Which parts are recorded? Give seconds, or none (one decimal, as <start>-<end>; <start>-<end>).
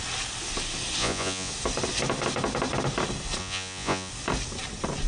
0.0-1.0; 1.5-3.4; 4.1-5.1